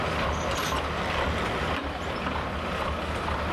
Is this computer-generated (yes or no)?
no